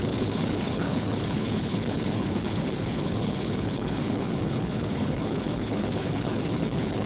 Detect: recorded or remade remade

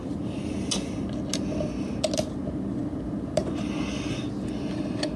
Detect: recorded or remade recorded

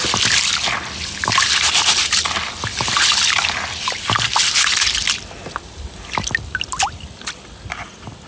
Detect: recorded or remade recorded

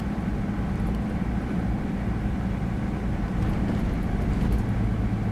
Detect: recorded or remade recorded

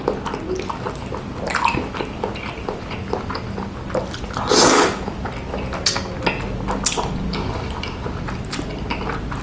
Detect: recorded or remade recorded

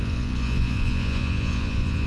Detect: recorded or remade remade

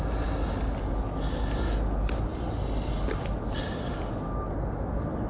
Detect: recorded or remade recorded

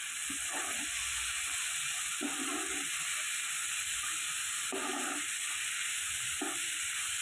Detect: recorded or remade recorded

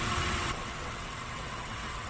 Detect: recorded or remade remade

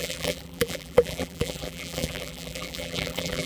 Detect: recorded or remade remade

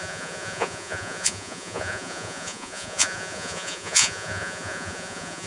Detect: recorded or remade remade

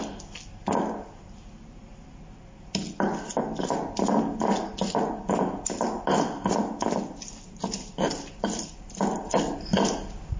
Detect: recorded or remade recorded